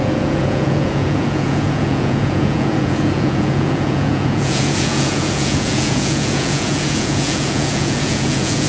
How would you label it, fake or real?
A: fake